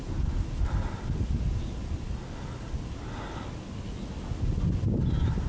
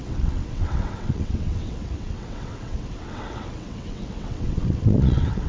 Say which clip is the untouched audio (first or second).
first